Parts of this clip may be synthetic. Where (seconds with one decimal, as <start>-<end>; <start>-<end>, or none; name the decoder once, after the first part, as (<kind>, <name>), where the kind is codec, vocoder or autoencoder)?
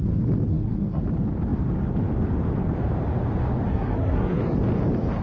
0.5-1.0 (codec, SNAC); 3.7-4.4